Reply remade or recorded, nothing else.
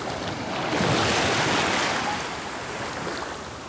recorded